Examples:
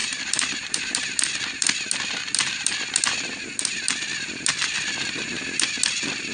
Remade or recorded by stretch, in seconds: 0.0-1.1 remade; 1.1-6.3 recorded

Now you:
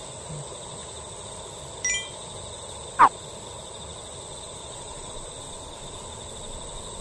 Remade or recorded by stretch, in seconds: 0.0-4.6 recorded; 4.6-5.1 remade; 5.1-7.0 recorded

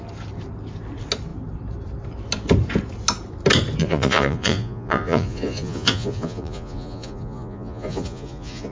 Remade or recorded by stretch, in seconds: 0.0-3.8 recorded; 3.8-8.7 remade

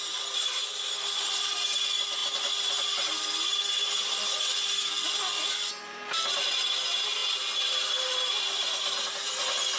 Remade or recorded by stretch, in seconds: 0.0-9.8 recorded

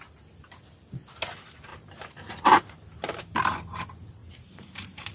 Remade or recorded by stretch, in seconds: 0.0-1.7 recorded; 1.7-3.2 remade; 3.2-4.2 recorded; 4.2-5.1 remade

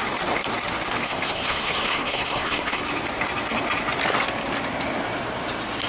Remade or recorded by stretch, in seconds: 0.0-1.0 recorded; 1.0-2.8 remade; 2.8-5.9 recorded

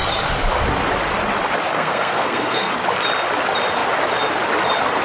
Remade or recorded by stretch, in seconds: 0.0-1.7 recorded; 1.7-2.7 remade; 2.7-5.0 recorded

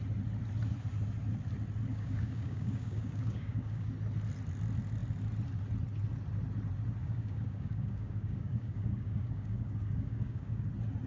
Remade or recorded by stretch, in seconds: 0.0-1.9 recorded; 1.9-3.9 remade; 3.9-7.0 recorded; 7.0-10.7 remade; 10.7-11.1 recorded